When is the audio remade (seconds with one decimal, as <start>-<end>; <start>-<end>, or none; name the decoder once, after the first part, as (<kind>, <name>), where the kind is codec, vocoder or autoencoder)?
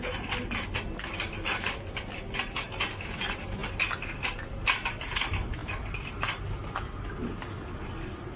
none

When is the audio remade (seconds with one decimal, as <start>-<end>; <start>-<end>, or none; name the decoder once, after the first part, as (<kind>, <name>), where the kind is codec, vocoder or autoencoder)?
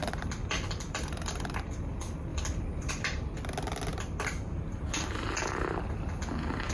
0.4-1.6 (vocoder, BigVGAN v2); 2.3-2.9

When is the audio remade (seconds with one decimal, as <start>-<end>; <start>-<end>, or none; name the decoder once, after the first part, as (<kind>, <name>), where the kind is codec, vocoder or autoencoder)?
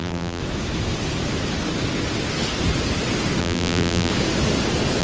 0.0-0.4 (vocoder, BigVGAN v2); 3.4-4.1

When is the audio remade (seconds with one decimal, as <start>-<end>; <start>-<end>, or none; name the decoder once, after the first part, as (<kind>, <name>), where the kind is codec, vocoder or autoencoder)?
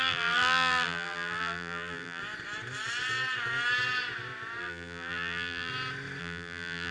0.0-2.2 (vocoder, BigVGAN v2); 4.6-5.7; 6.2-6.9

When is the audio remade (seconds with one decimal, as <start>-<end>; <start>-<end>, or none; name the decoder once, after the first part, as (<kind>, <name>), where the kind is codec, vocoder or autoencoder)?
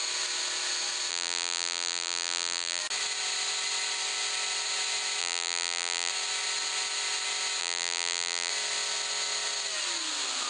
1.1-2.8 (vocoder, BigVGAN v2); 5.2-6.1; 7.6-8.5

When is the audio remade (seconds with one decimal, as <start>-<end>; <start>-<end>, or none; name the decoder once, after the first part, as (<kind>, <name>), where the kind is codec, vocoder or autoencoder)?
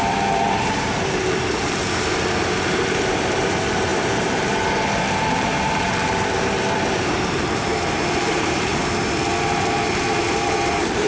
0.0-8.7 (vocoder, BigVGAN v2); 9.4-11.1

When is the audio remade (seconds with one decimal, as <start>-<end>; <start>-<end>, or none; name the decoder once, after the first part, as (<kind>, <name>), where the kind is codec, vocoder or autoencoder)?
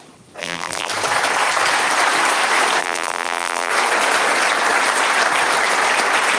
0.4-0.9 (vocoder, BigVGAN v2); 2.8-3.7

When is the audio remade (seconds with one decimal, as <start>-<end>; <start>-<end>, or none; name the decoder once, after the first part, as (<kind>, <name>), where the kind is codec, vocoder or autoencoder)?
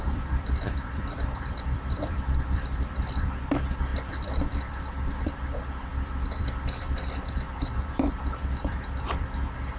0.0-9.8 (vocoder, BigVGAN v2)